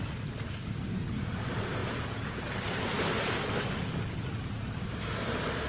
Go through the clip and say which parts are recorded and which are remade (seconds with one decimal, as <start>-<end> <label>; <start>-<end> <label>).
0.0-1.8 recorded; 1.8-2.4 remade; 2.4-5.7 recorded